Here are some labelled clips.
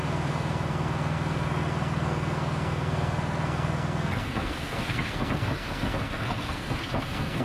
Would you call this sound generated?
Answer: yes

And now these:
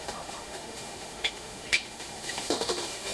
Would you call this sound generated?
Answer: yes